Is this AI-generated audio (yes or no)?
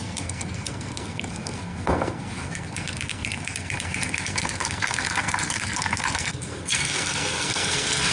yes